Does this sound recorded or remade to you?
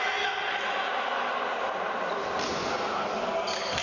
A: recorded